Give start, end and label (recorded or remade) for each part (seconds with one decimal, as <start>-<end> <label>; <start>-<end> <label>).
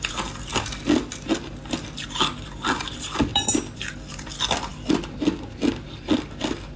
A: 0.0-6.8 recorded